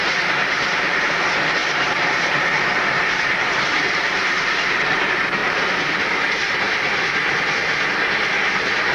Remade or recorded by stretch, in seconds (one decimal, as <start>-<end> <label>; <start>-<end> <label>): 0.0-1.6 recorded; 1.6-5.0 remade; 5.0-5.4 recorded; 5.4-6.6 remade; 6.6-8.9 recorded